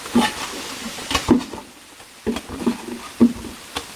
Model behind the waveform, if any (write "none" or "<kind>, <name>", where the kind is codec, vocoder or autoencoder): none